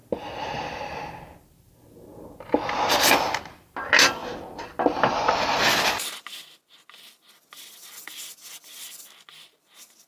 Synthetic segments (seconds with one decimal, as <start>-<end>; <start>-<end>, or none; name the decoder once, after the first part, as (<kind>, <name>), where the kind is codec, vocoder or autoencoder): none